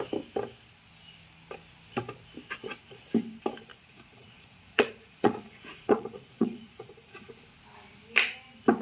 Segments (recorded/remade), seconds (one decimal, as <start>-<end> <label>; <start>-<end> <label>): 0.0-3.7 recorded; 3.7-7.3 remade; 7.3-8.8 recorded